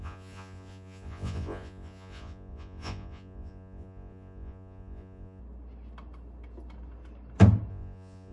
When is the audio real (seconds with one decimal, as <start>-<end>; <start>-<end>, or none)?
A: 5.4-7.7